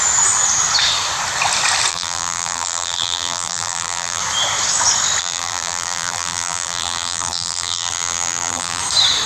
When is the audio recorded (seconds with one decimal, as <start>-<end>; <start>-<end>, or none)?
0.0-1.9; 4.2-5.2; 8.8-9.3